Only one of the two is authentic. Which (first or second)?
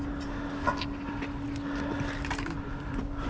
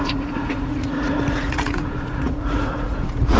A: first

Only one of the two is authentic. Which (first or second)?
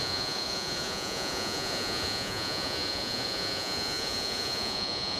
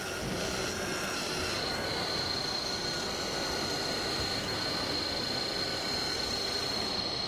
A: second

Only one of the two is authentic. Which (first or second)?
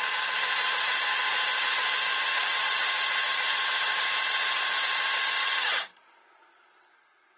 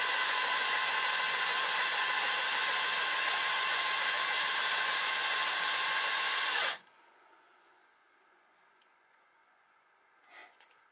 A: first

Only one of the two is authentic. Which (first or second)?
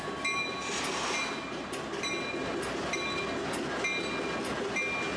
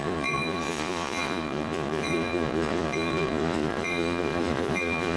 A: first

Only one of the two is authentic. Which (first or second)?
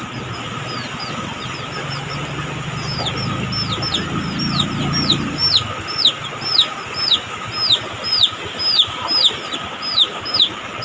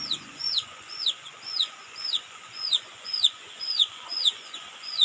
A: first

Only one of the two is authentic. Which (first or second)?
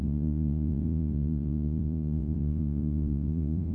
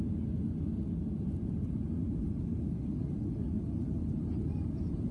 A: second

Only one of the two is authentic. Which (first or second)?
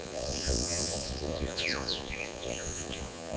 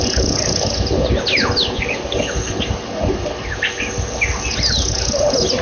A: second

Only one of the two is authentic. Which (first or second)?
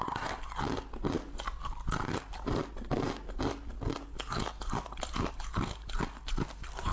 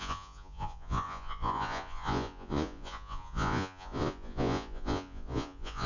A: first